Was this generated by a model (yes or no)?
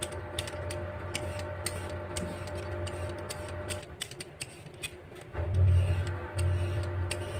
no